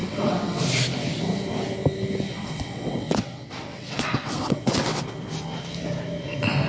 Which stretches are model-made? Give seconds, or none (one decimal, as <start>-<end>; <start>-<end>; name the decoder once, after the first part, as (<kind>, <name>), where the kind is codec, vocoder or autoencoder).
0.0-0.6 (vocoder, WaveNeXt); 2.3-5.0